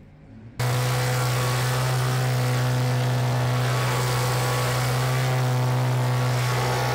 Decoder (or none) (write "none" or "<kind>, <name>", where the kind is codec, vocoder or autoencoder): none